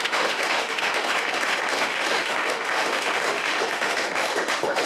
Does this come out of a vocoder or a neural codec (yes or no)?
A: yes